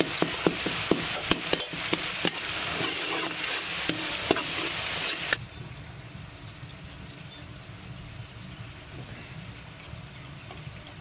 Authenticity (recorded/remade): remade